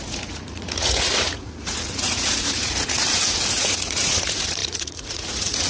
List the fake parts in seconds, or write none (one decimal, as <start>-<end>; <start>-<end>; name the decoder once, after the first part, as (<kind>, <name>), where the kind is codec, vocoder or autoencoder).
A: 0.0-5.7 (vocoder, Vocos)